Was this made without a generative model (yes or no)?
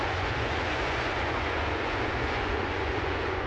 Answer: no